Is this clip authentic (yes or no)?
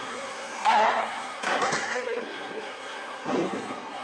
no